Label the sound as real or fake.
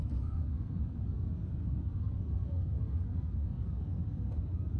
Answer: fake